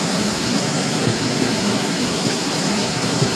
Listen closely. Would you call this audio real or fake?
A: fake